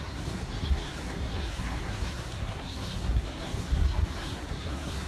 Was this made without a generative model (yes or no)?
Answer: no